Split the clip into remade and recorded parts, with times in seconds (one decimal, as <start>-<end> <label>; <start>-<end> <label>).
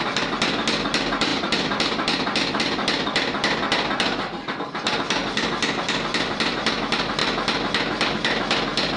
0.0-1.3 recorded; 1.3-2.6 remade; 2.6-5.2 recorded; 5.2-6.7 remade; 6.7-9.0 recorded